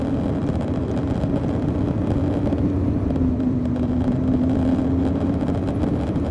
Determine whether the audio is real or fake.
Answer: fake